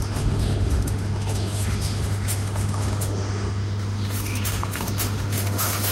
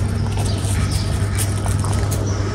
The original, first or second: second